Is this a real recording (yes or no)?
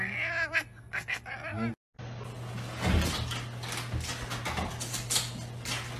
yes